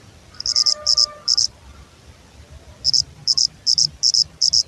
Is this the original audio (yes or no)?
yes